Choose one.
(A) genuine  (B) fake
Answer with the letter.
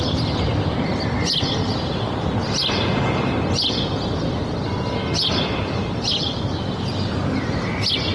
A